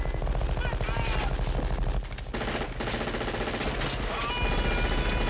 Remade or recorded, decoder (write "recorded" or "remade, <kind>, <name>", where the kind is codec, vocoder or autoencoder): recorded